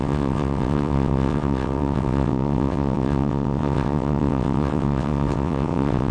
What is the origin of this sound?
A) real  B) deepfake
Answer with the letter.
B